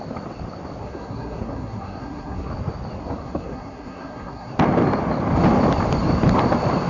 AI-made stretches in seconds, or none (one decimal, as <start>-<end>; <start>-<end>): 0.8-2.5; 3.0-4.5